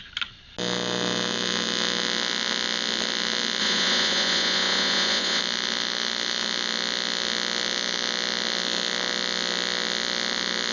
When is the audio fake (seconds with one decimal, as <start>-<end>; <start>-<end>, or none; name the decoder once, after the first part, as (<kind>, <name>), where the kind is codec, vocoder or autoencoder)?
3.6-5.4 (vocoder, Vocos)